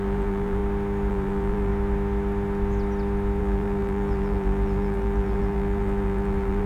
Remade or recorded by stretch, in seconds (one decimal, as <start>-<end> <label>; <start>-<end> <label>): 0.0-0.6 remade; 0.6-1.1 recorded; 1.1-1.7 remade; 1.7-3.4 recorded; 3.4-6.7 remade